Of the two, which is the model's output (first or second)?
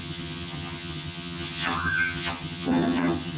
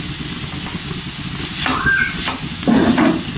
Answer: first